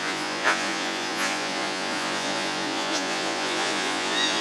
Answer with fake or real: fake